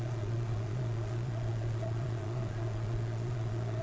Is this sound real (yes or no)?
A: no